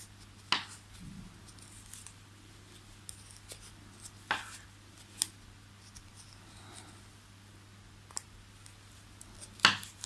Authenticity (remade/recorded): recorded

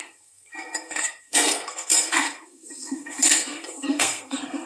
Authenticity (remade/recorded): remade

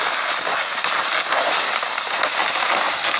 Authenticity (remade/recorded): recorded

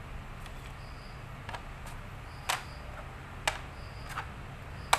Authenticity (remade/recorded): recorded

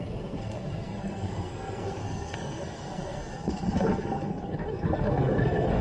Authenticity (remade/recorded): remade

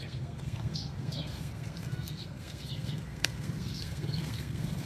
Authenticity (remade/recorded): remade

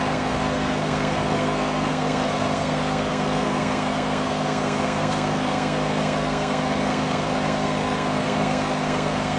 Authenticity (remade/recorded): remade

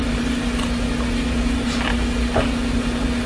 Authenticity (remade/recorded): recorded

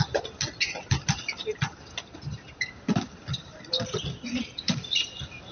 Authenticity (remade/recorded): recorded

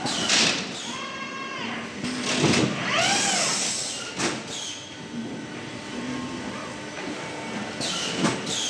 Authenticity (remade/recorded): recorded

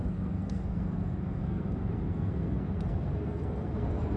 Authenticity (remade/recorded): remade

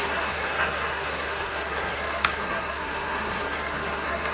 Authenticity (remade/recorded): remade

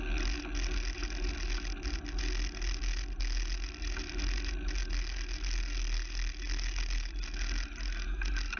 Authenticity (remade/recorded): recorded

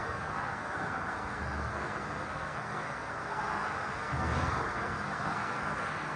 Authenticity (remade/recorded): remade